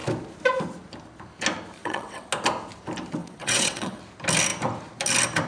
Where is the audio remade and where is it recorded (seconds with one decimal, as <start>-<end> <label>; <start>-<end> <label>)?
0.0-1.8 recorded; 1.8-2.3 remade; 2.3-3.2 recorded; 3.2-4.0 remade; 4.0-5.5 recorded

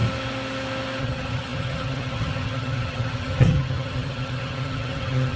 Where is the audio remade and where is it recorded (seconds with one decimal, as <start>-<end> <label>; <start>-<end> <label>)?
0.0-1.0 recorded; 1.0-5.4 remade

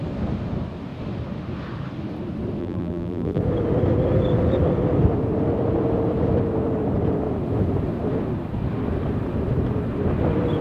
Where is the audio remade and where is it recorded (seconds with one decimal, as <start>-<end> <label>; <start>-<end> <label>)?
0.0-2.6 recorded; 2.6-3.4 remade; 3.4-10.6 recorded

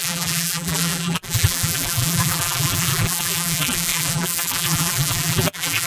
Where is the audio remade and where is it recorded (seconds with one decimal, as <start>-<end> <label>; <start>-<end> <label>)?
0.0-5.9 remade

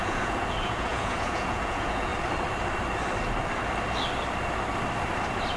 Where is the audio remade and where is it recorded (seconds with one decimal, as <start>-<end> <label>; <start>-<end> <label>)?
0.0-2.1 remade; 2.1-5.6 recorded

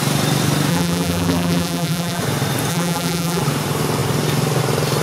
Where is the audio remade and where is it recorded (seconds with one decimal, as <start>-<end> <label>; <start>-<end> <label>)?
0.0-0.7 recorded; 0.7-2.2 remade; 2.2-2.7 recorded; 2.7-3.4 remade; 3.4-5.0 recorded

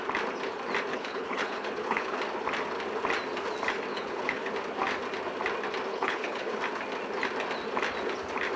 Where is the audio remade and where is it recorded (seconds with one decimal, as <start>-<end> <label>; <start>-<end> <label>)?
0.0-0.9 recorded; 0.9-2.2 remade; 2.2-3.9 recorded; 3.9-4.5 remade; 4.5-5.9 recorded; 5.9-6.6 remade; 6.6-8.6 recorded

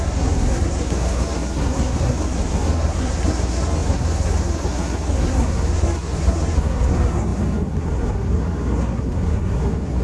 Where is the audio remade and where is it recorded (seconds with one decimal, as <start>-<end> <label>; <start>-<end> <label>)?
0.0-10.0 remade